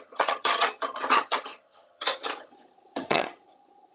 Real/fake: fake